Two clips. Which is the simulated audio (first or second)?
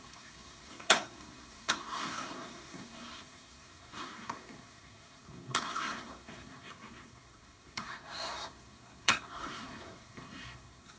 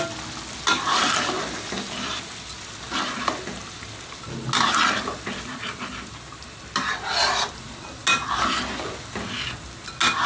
first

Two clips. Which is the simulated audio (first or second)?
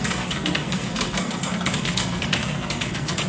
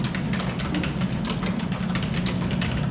first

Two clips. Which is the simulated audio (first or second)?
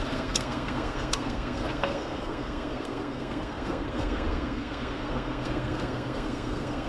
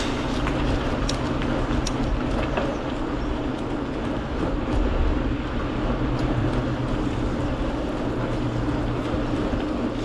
first